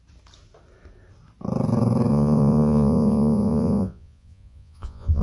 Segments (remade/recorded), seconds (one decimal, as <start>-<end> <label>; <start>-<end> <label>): 0.0-2.1 recorded; 2.1-5.2 remade